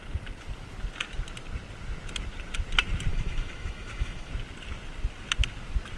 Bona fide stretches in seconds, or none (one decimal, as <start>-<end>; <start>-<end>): 0.0-3.1; 4.3-6.0

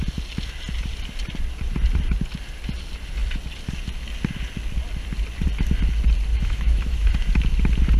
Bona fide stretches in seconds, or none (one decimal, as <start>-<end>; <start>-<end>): 0.0-6.3; 7.1-8.0

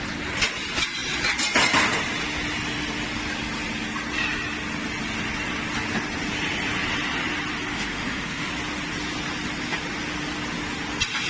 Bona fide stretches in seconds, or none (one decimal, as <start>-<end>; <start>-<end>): 0.0-7.7; 8.5-11.3

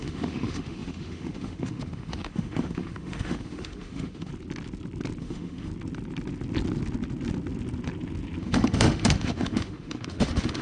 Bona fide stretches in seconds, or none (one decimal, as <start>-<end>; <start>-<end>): 4.3-5.2; 5.7-8.4

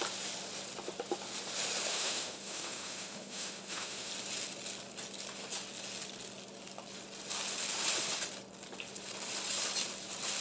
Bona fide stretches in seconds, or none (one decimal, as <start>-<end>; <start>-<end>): 0.0-1.9; 4.1-10.4

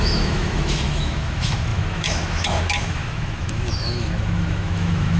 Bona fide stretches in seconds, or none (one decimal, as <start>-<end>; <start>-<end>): none